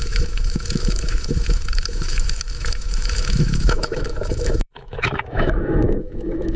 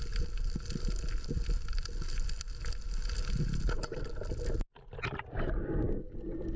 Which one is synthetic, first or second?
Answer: first